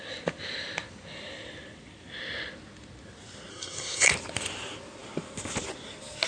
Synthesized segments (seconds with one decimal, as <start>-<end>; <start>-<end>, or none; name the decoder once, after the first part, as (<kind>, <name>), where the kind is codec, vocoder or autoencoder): 3.5-4.1 (codec, SNAC)